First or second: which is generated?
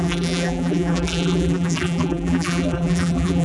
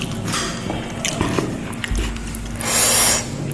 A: first